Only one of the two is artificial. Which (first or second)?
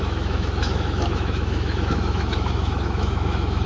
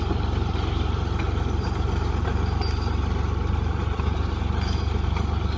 first